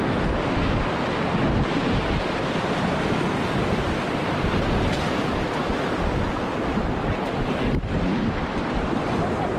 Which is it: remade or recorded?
recorded